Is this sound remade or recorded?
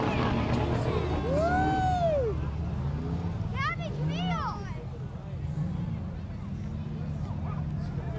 recorded